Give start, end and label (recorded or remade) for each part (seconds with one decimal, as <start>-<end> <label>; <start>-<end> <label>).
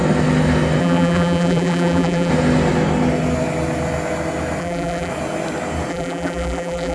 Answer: 0.0-0.8 recorded; 0.8-2.3 remade; 2.3-4.6 recorded; 4.6-5.1 remade; 5.1-5.9 recorded; 5.9-6.9 remade